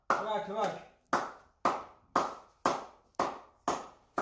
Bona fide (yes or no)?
yes